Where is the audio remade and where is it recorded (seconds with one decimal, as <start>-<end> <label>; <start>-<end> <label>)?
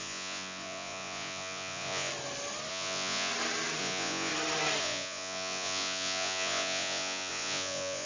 0.0-2.1 remade; 2.1-2.7 recorded; 2.7-3.3 remade; 3.3-3.8 recorded; 3.8-4.3 remade; 4.3-4.8 recorded; 4.8-8.1 remade